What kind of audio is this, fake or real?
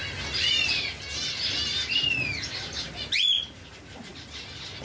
real